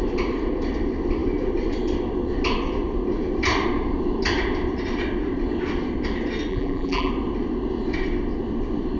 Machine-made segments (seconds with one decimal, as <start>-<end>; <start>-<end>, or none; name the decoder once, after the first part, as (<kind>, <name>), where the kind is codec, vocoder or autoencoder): 6.5-7.1 (vocoder, BigVGAN v2)

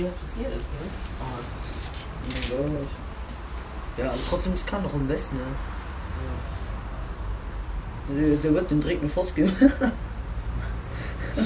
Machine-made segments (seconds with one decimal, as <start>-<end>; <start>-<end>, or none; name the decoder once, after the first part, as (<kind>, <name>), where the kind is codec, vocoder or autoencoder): 0.7-3.0 (vocoder, BigVGAN v2)

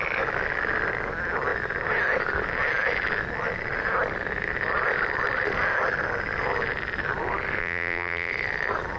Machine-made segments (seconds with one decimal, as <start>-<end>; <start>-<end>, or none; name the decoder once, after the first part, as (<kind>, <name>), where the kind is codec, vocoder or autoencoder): 7.6-8.3 (vocoder, BigVGAN v2)